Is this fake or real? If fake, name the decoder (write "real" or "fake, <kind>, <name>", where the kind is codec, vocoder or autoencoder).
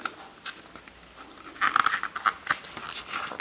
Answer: real